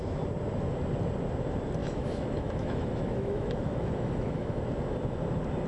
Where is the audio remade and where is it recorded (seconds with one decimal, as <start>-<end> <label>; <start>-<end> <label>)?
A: 0.0-1.8 recorded; 1.8-4.6 remade; 4.6-5.7 recorded